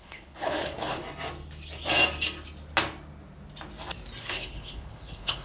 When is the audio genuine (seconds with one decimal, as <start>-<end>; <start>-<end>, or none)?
1.0-4.2